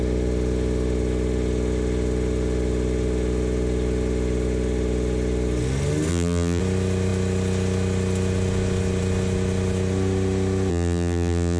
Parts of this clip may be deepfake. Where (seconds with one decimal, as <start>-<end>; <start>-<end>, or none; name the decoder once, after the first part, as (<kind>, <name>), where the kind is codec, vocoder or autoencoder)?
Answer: 6.1-6.6 (vocoder, BigVGAN v2); 10.7-11.6